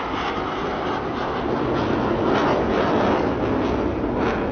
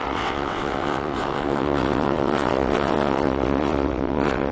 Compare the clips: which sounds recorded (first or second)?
first